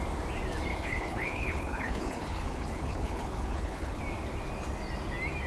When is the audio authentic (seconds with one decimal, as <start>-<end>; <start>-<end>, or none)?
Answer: 0.0-0.7; 4.0-5.5